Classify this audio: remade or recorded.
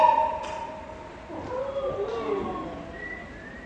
recorded